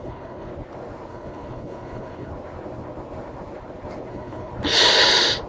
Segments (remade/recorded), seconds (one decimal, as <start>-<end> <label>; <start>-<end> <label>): 0.0-0.5 remade; 0.5-1.1 recorded; 1.1-2.3 remade; 2.3-4.1 recorded; 4.1-4.5 remade; 4.5-5.5 recorded